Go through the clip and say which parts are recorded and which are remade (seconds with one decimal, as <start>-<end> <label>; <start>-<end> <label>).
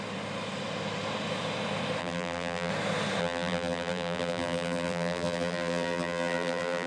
0.0-2.0 recorded; 2.0-2.7 remade; 2.7-3.2 recorded; 3.2-6.9 remade